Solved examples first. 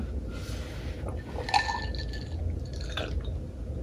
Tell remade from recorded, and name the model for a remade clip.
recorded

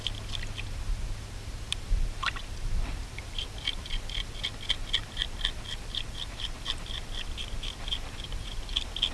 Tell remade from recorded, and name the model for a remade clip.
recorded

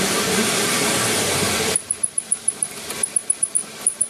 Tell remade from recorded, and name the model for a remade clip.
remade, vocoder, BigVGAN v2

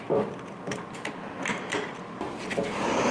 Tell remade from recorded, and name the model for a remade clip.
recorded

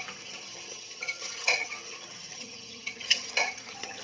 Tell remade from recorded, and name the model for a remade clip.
remade, vocoder, HiFi-GAN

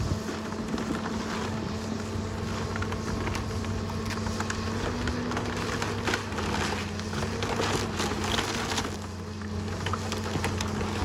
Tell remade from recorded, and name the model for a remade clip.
recorded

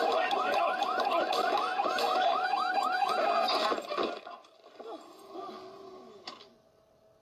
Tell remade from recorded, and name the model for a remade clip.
recorded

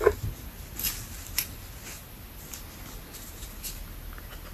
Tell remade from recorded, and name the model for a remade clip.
recorded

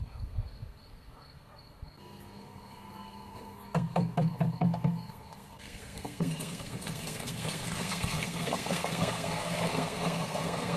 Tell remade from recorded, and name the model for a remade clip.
remade, codec, SNAC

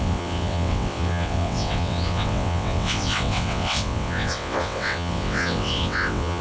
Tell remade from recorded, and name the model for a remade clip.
remade, vocoder, WaveNeXt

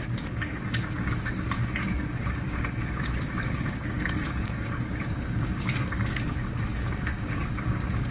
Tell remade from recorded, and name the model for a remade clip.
remade, codec, DAC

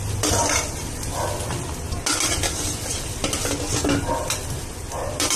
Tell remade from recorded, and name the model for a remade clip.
recorded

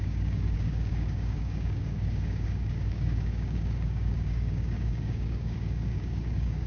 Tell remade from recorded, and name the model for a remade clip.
remade, codec, DAC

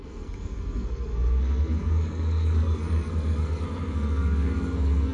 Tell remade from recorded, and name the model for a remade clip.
remade, codec, SNAC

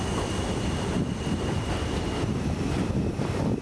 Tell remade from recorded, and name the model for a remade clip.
recorded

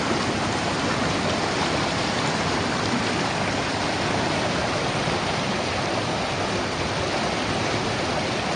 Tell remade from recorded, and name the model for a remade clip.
recorded